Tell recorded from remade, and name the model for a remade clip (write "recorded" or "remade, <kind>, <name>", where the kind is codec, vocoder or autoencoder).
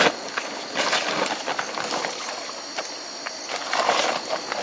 recorded